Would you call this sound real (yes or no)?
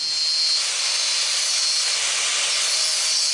yes